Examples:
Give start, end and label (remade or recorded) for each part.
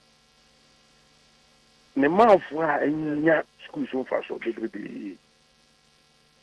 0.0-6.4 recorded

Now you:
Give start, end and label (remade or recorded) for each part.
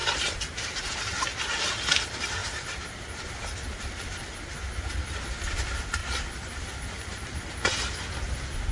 0.0-1.2 remade; 1.2-2.4 recorded; 2.4-3.3 remade; 3.3-8.7 recorded